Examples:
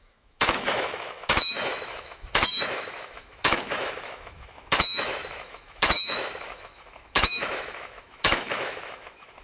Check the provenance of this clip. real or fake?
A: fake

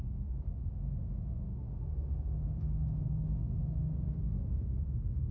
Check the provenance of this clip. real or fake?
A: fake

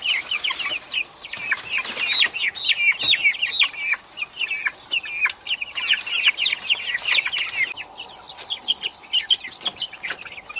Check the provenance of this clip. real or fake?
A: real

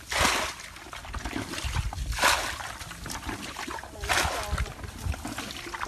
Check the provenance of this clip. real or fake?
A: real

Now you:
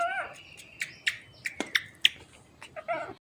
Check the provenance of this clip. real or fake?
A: real